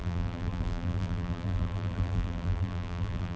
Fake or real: fake